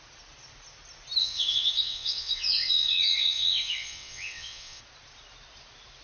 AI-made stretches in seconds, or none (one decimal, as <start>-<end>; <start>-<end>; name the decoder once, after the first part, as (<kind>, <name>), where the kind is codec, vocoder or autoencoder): 1.2-4.8 (vocoder, WaveNeXt)